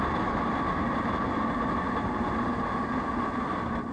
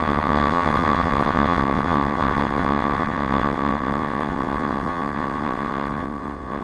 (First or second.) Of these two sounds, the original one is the first